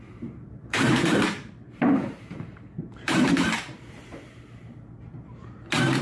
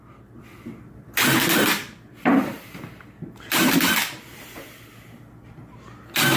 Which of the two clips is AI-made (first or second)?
first